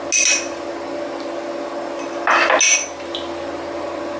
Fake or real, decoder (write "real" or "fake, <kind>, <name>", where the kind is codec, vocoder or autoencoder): real